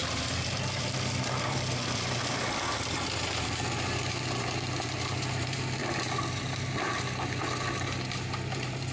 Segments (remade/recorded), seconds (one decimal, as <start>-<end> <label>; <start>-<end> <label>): 0.0-5.8 remade; 5.8-6.4 recorded; 6.4-8.9 remade